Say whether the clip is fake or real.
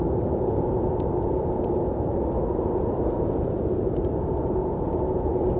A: real